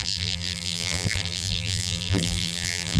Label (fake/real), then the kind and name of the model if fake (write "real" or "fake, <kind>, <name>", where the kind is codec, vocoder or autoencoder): fake, vocoder, BigVGAN v2